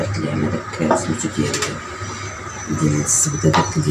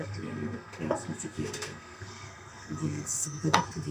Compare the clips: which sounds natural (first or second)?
first